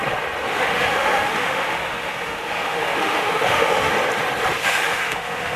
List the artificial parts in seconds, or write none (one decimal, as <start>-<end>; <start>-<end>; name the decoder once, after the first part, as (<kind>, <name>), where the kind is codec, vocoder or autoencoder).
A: 0.5-3.9 (autoencoder, DAC-VAE); 4.6-5.6